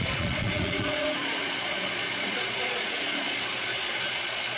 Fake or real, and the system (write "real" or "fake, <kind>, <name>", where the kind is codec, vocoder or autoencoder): fake, vocoder, Vocos